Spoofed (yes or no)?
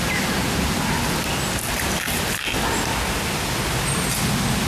no